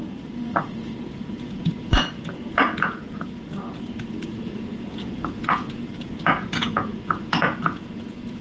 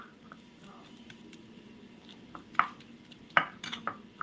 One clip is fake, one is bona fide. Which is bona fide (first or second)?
second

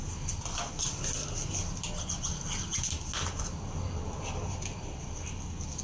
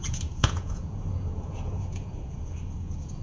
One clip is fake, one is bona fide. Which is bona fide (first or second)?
first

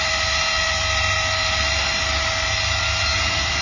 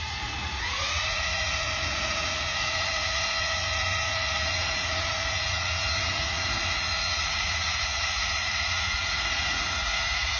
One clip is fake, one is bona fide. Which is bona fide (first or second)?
first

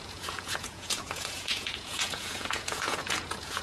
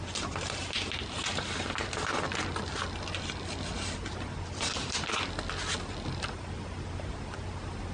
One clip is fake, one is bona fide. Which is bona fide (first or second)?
second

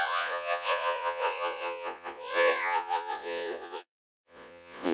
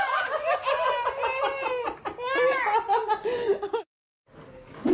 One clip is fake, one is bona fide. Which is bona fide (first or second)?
second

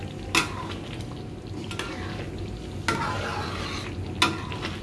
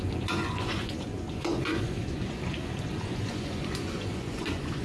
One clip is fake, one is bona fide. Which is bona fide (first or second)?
first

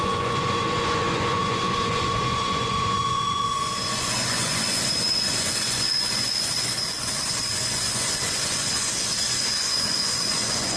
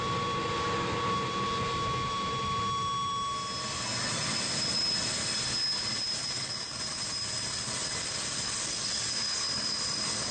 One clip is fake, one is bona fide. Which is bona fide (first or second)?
second